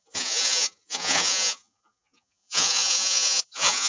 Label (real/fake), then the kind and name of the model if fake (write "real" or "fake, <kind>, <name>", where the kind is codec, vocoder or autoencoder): fake, vocoder, Vocos